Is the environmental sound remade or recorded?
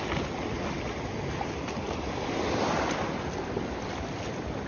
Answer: recorded